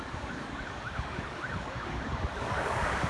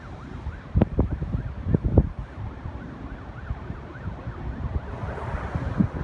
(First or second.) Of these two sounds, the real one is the second